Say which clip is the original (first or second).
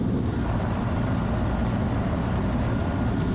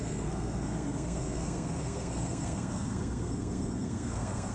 first